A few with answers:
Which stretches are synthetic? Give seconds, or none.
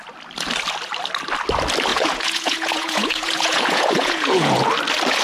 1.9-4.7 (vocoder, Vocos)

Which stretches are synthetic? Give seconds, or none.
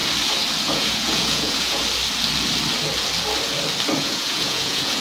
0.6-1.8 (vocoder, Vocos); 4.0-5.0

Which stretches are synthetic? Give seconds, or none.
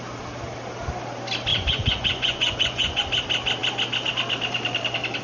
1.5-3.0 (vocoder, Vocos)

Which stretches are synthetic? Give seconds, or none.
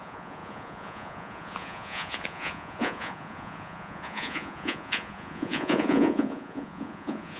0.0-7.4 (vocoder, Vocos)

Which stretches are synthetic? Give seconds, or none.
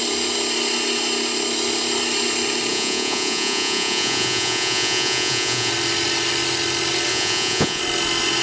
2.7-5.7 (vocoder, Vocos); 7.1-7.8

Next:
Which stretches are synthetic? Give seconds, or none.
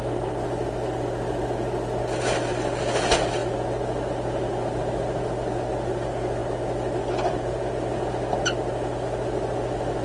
none